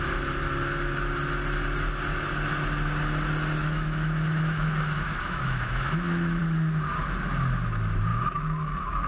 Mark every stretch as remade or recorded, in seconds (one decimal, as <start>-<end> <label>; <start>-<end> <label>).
0.0-3.6 recorded; 3.6-6.4 remade; 6.4-8.1 recorded; 8.1-9.1 remade